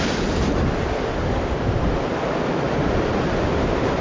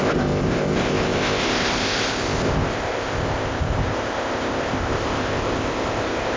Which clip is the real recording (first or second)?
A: first